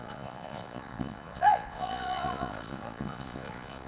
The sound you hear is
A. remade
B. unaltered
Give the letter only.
A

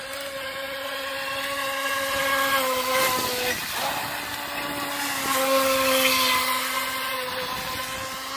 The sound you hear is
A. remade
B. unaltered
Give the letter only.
B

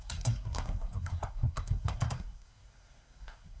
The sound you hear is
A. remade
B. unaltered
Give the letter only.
A